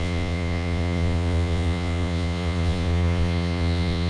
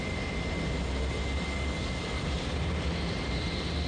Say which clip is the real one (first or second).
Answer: second